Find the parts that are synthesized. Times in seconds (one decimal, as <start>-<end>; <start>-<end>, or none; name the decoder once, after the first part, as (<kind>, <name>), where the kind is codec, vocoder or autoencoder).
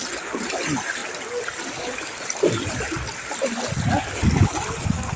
none